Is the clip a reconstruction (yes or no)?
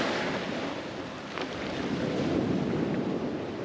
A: no